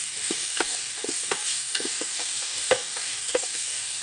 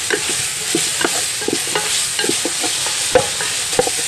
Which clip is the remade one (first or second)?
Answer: first